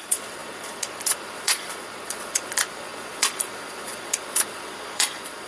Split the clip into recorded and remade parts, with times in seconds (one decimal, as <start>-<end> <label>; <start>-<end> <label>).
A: 0.0-5.5 remade